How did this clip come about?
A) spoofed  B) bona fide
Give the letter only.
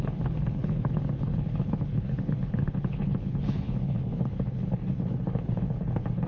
A